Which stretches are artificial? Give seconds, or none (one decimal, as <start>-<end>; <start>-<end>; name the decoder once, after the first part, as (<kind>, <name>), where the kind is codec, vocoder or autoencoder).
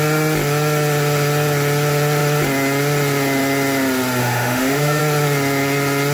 4.2-5.0 (autoencoder, DAC-VAE)